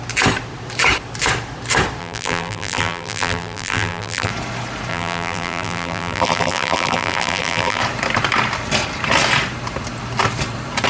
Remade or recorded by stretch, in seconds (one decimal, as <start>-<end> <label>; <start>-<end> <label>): 0.0-2.0 recorded; 2.0-4.3 remade; 4.3-4.9 recorded; 4.9-7.8 remade; 7.8-10.9 recorded